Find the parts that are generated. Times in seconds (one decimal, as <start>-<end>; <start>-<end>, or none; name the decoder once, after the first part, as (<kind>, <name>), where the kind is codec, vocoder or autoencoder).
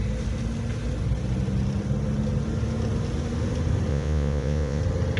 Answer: 3.9-4.8 (vocoder, Vocos)